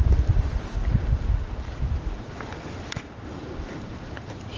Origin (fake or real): real